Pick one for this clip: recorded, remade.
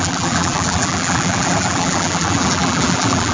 remade